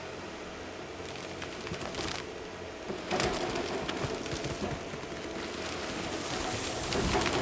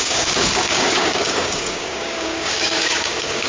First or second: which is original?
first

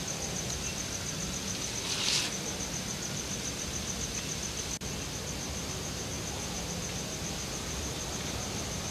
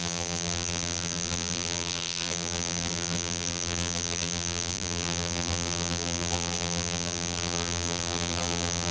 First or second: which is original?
first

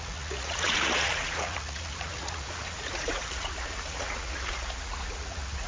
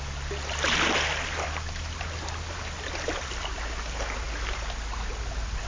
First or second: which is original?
second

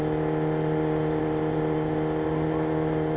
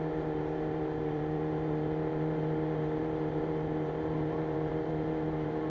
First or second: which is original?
first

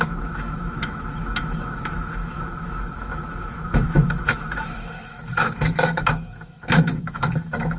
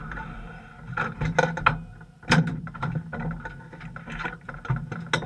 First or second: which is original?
second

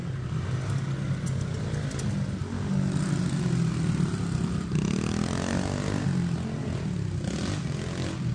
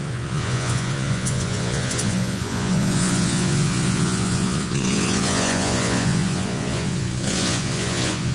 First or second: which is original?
first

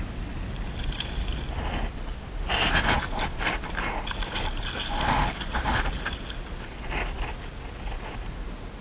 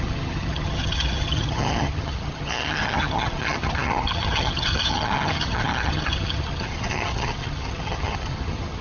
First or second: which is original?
first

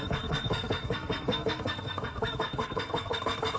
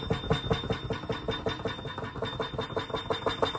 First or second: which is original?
second